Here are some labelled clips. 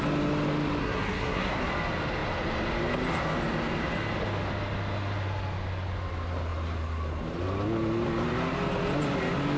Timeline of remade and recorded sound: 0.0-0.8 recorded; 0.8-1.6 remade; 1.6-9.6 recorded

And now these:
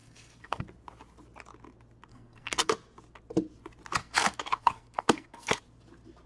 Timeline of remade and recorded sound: 0.0-0.6 remade; 0.6-2.1 recorded; 2.1-2.7 remade; 2.7-4.0 recorded; 4.0-5.6 remade; 5.6-6.3 recorded

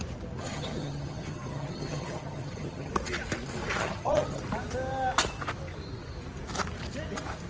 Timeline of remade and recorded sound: 0.0-0.4 recorded; 0.4-2.9 remade; 2.9-3.8 recorded; 3.8-4.4 remade; 4.4-7.5 recorded

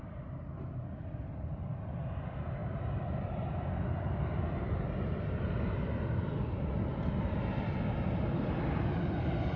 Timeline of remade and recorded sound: 0.0-9.6 recorded

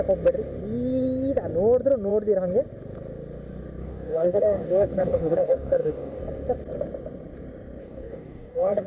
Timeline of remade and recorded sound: 0.0-3.8 recorded; 3.8-6.2 remade; 6.2-7.8 recorded; 7.8-8.9 remade

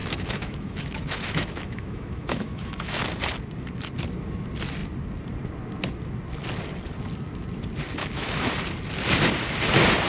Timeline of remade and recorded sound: 0.0-3.0 remade; 3.0-8.0 recorded; 8.0-8.5 remade; 8.5-10.1 recorded